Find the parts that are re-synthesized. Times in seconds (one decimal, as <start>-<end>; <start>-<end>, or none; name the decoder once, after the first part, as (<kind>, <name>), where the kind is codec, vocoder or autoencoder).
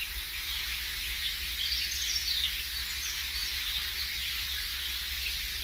3.4-5.6 (vocoder, BigVGAN v2)